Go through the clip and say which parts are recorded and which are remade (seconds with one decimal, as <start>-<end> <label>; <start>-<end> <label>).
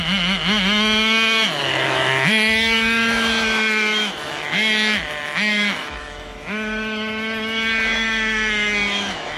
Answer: 0.0-9.4 remade